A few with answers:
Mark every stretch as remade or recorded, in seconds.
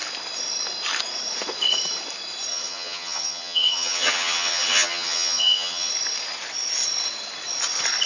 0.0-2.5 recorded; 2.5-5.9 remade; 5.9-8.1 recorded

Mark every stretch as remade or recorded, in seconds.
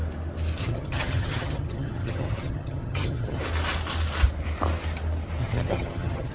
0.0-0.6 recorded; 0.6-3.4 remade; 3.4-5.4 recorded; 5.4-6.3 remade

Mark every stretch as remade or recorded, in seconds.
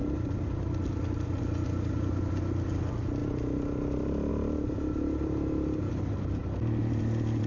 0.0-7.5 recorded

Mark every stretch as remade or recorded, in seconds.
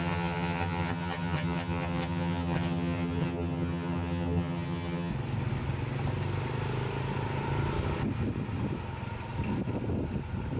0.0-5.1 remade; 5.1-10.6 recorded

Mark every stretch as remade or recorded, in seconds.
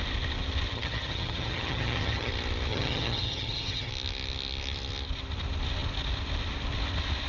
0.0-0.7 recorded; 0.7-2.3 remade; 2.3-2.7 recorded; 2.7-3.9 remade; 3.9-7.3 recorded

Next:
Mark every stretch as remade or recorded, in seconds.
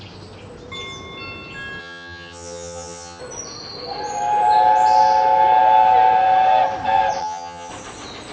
0.0-1.8 recorded; 1.8-3.2 remade; 3.2-7.2 recorded; 7.2-7.7 remade; 7.7-8.3 recorded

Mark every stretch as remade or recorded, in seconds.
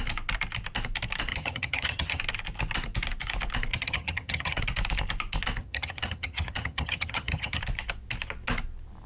0.0-1.3 recorded; 1.3-2.2 remade; 2.2-3.7 recorded; 3.7-4.6 remade; 4.6-5.6 recorded; 5.6-7.6 remade; 7.6-9.1 recorded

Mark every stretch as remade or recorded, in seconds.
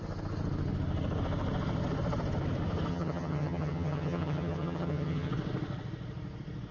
0.0-2.9 recorded; 2.9-5.3 remade; 5.3-6.7 recorded